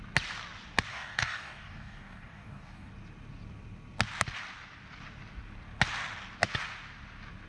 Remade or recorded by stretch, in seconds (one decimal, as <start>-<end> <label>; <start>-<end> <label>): 0.0-0.9 recorded; 0.9-2.9 remade; 2.9-7.5 recorded

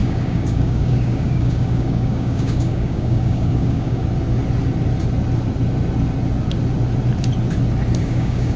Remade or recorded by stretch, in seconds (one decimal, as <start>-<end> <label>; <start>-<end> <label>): 0.0-4.0 remade; 4.0-8.0 recorded; 8.0-8.6 remade